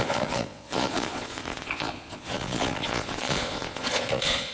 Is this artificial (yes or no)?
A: yes